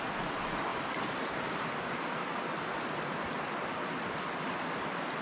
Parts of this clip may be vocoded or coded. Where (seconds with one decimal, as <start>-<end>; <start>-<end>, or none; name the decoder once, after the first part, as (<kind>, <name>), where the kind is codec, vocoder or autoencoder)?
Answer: none